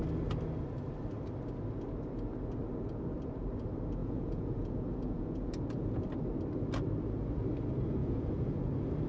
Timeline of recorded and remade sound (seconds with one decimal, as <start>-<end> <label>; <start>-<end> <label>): 0.0-4.0 recorded; 4.0-6.0 remade; 6.0-8.0 recorded; 8.0-8.6 remade; 8.6-9.1 recorded